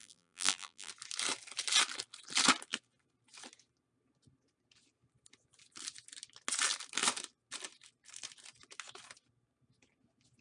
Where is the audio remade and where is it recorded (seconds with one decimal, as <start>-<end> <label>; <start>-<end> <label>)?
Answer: 0.0-0.9 remade; 0.9-10.4 recorded